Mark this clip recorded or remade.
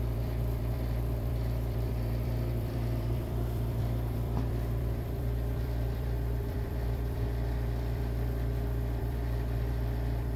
remade